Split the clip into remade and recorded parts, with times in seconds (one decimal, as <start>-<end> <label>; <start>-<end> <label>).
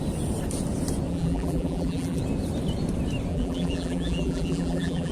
0.0-1.1 recorded; 1.1-2.2 remade; 2.2-3.3 recorded; 3.3-5.1 remade